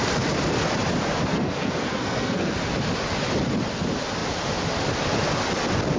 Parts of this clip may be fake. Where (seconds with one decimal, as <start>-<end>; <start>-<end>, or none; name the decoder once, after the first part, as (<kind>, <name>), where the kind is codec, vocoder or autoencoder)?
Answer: 1.3-2.5 (codec, SNAC)